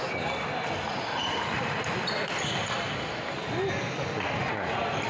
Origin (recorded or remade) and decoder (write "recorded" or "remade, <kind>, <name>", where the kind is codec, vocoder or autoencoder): recorded